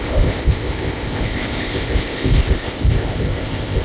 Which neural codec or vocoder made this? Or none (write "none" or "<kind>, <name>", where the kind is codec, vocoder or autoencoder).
codec, ZipCodec